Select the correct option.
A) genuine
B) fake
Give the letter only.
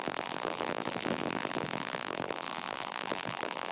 B